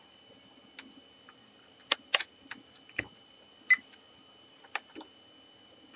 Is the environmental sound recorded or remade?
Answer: recorded